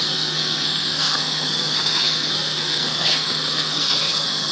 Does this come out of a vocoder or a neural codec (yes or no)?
yes